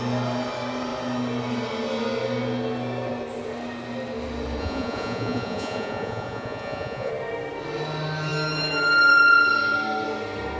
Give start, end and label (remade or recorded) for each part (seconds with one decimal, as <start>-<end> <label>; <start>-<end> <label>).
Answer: 0.0-4.6 recorded; 4.6-7.1 remade; 7.1-10.6 recorded